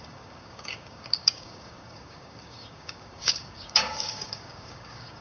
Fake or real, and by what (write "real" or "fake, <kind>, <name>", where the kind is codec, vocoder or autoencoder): fake, codec, DAC